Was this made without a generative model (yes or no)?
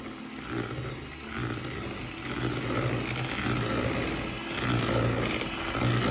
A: yes